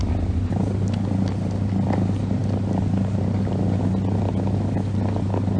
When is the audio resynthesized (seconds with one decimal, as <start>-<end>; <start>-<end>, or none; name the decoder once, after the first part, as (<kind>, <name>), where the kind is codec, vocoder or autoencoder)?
none